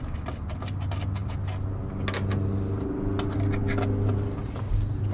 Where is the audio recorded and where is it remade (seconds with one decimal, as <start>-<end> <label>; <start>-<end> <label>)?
0.0-5.1 recorded

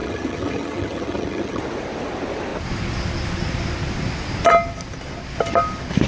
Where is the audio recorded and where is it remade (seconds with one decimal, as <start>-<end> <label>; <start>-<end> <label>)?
0.0-1.6 remade; 1.6-6.1 recorded

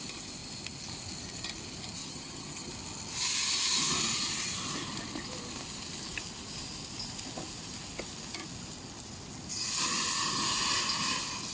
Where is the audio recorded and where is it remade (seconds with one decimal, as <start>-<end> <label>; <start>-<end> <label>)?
0.0-2.0 recorded; 2.0-2.7 remade; 2.7-11.5 recorded

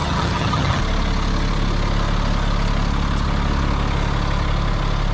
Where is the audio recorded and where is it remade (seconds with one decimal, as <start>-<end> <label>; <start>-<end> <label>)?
0.0-0.8 remade; 0.8-5.1 recorded

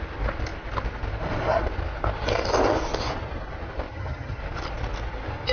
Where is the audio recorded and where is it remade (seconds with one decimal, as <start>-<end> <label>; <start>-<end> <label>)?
0.0-3.9 recorded; 3.9-4.4 remade; 4.4-5.5 recorded

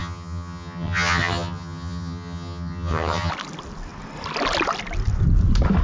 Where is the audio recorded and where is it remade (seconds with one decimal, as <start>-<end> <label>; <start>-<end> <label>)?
0.0-3.3 remade; 3.3-5.8 recorded

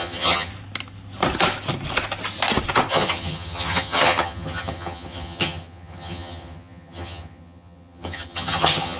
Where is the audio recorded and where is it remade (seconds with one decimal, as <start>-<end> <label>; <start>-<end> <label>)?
0.0-0.5 remade; 0.5-2.9 recorded; 2.9-9.0 remade